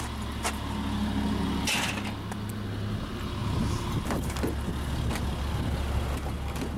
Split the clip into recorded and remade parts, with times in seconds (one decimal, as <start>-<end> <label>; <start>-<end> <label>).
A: 0.0-6.8 recorded